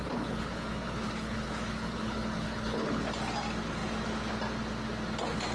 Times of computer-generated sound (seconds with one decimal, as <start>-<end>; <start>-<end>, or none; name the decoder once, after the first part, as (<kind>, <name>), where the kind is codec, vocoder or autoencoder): 0.0-3.0 (codec, HILCodec)